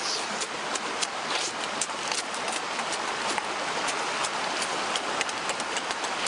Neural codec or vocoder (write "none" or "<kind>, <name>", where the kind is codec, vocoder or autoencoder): none